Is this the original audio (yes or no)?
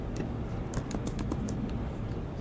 yes